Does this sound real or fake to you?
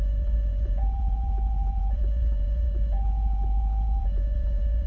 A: fake